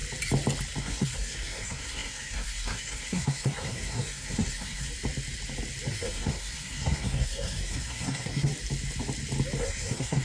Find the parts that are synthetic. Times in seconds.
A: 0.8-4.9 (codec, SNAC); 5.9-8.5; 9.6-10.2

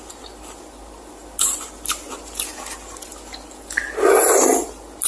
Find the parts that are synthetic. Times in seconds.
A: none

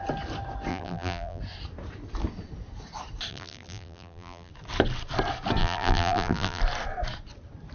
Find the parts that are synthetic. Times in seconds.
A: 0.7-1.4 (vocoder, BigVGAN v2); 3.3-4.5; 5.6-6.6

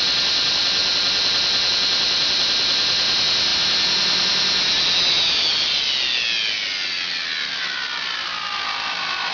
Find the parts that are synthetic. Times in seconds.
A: none

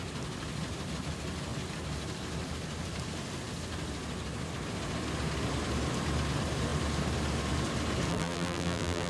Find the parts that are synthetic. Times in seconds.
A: 8.1-9.1 (vocoder, BigVGAN v2)

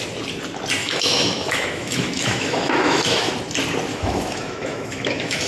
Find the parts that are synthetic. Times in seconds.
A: 0.8-3.3 (autoencoder, DAC-VAE); 3.9-5.5